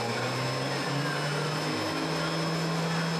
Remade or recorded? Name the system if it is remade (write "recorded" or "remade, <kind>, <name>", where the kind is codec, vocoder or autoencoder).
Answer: recorded